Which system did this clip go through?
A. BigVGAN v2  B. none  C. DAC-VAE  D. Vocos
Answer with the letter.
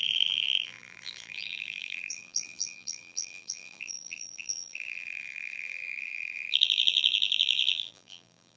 A